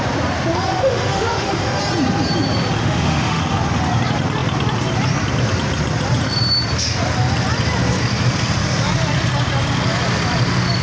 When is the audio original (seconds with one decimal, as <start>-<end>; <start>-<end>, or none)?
0.0-0.7; 1.8-2.8; 3.4-10.8